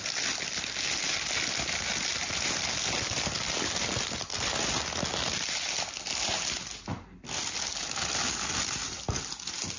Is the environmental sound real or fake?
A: real